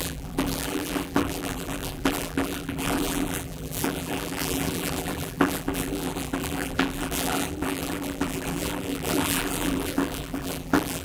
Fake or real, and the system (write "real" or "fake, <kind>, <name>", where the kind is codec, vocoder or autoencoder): fake, vocoder, BigVGAN v2